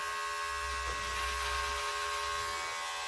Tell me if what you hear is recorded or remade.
recorded